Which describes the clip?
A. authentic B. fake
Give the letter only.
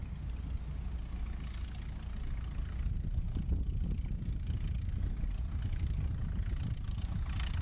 A